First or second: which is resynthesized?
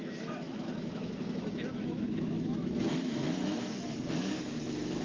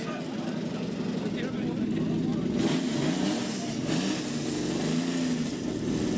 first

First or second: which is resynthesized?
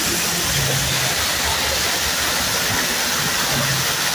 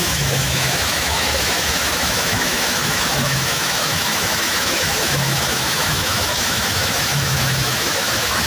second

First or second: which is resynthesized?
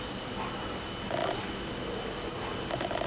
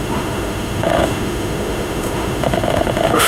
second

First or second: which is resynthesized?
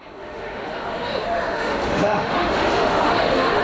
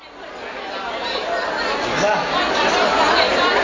first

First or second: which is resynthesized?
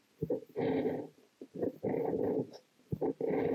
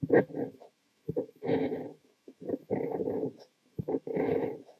second